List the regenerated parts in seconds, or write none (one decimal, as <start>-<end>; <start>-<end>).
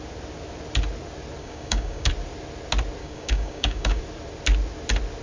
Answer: 1.4-2.1; 3.0-4.0